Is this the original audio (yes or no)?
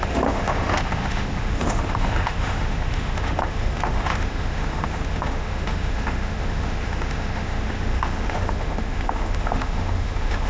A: no